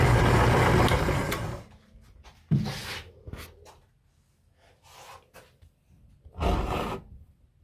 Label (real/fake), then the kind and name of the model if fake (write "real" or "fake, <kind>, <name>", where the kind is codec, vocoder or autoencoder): real